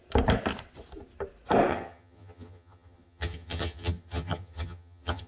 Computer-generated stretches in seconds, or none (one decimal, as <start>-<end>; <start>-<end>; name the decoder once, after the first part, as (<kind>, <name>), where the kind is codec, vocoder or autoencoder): 1.7-5.3 (vocoder, HiFi-GAN)